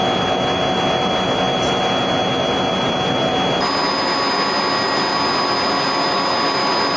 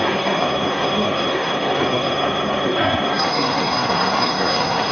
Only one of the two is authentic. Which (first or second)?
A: first